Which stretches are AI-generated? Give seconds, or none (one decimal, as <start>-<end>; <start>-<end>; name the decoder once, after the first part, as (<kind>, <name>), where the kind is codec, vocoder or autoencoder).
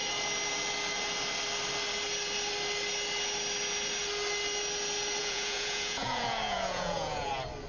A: 5.2-7.3 (vocoder, Vocos)